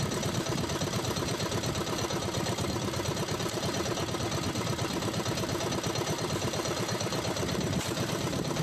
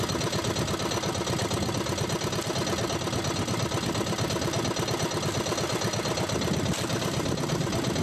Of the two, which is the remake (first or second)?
first